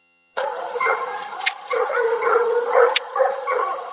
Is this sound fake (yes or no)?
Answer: yes